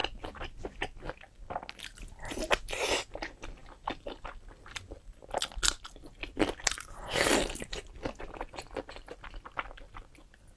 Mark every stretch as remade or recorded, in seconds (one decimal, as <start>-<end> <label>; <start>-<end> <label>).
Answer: 0.0-10.6 recorded